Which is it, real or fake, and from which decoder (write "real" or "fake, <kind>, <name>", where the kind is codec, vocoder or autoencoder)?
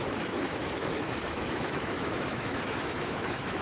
fake, autoencoder, DAC-VAE